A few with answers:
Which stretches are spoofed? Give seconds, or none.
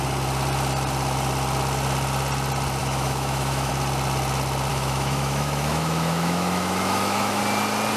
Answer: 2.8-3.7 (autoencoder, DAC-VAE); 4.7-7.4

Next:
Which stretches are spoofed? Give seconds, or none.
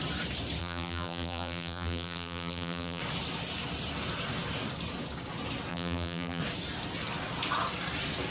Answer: 0.6-3.0 (vocoder, BigVGAN v2); 5.7-6.4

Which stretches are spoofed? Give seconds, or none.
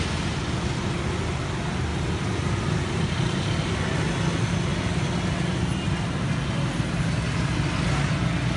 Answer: none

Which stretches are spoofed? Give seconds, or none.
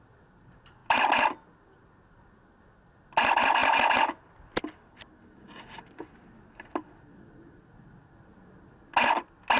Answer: none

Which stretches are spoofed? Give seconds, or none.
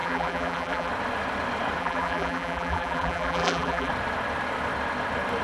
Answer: 0.0-0.9 (vocoder, BigVGAN v2); 1.8-3.9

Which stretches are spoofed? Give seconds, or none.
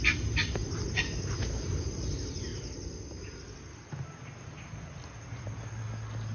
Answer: 0.6-1.4 (vocoder, BigVGAN v2)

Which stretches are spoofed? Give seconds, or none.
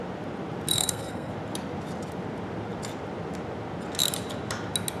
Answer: 0.7-1.3 (codec, SNAC)